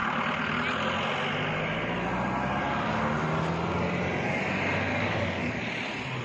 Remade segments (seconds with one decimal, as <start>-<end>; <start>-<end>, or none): 4.9-5.6